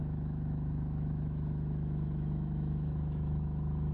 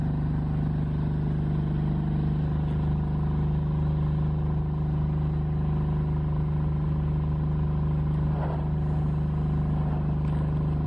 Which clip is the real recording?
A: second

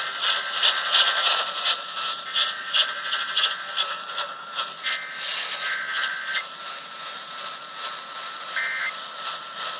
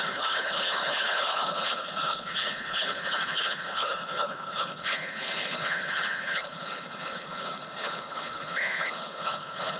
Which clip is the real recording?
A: first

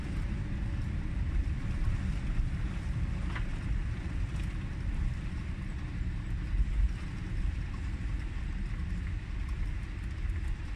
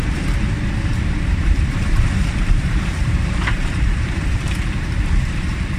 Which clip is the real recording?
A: first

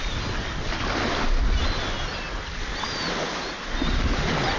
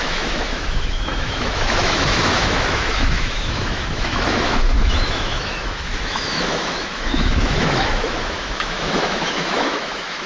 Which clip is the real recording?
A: first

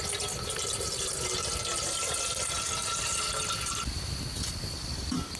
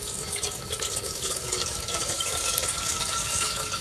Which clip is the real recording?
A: first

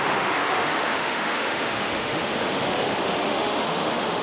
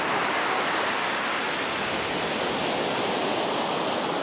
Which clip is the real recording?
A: second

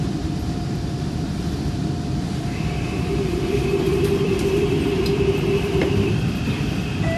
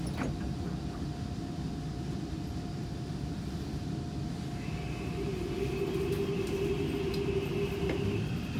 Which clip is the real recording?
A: second